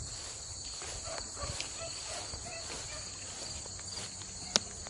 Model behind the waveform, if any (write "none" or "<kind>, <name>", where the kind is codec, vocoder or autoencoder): none